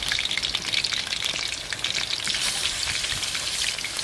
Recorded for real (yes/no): yes